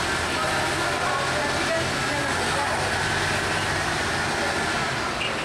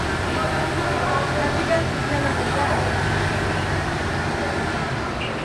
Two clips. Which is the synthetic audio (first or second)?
second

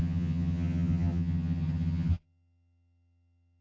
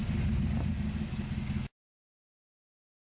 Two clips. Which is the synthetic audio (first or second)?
first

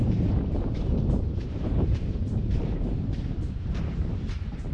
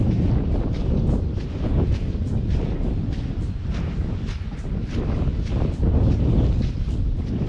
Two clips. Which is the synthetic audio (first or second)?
first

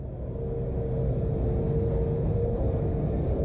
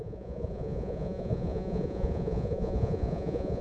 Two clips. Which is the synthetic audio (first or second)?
second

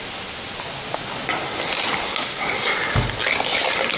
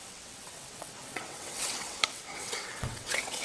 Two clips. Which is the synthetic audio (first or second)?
second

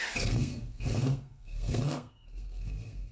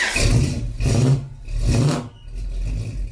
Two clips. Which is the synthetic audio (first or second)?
first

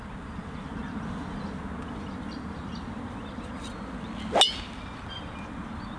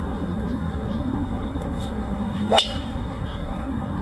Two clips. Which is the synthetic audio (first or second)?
second